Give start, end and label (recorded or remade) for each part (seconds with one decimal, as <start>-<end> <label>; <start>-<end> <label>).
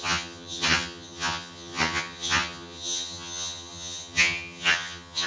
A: 0.0-5.3 remade